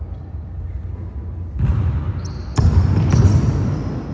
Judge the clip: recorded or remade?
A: recorded